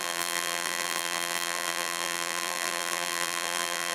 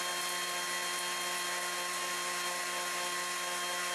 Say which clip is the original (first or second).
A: second